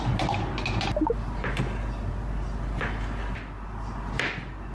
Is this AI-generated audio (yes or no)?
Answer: no